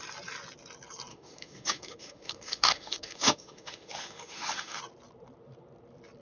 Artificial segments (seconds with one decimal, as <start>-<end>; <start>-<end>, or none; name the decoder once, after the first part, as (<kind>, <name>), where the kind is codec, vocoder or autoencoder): 1.1-4.8 (autoencoder, DAC-VAE)

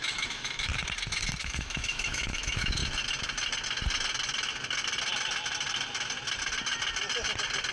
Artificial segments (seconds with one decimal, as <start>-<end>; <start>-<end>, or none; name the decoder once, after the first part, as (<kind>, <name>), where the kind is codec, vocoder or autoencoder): 0.0-0.7 (autoencoder, DAC-VAE); 1.4-2.8

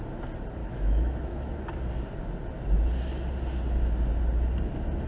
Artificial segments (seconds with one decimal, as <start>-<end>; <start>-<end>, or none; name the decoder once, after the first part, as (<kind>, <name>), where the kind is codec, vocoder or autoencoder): 0.6-1.5 (autoencoder, DAC-VAE)

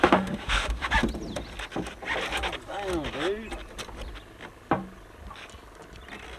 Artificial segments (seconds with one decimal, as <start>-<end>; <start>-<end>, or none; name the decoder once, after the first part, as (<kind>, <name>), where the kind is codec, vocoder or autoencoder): 0.0-0.9 (autoencoder, DAC-VAE)

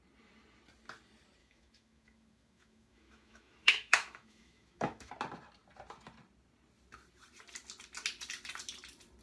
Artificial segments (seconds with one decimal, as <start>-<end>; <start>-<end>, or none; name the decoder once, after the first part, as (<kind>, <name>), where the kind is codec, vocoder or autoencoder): 1.4-5.1 (autoencoder, DAC-VAE)

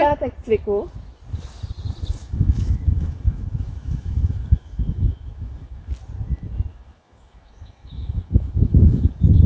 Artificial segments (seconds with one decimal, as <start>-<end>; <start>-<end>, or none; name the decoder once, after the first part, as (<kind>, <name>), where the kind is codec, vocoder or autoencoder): 2.2-5.9 (autoencoder, DAC-VAE); 6.7-9.5

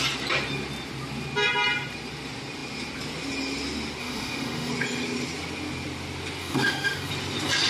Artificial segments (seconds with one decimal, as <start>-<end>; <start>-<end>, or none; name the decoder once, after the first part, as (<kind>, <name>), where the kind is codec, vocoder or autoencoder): 4.0-4.7 (autoencoder, DAC-VAE); 6.4-7.1